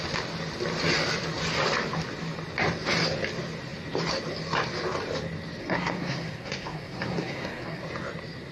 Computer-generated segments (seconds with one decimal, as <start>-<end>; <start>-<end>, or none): 5.6-7.8